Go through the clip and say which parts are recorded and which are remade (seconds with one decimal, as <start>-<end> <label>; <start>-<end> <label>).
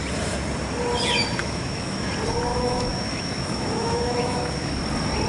0.0-1.4 recorded; 1.4-2.1 remade; 2.1-2.5 recorded; 2.5-4.7 remade; 4.7-5.3 recorded